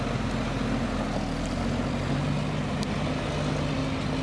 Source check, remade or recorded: recorded